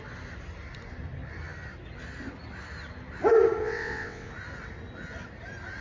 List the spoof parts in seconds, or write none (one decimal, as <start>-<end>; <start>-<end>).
3.6-4.3